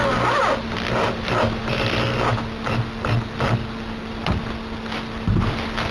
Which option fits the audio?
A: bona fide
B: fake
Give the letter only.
A